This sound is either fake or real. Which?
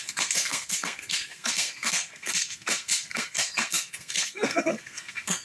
fake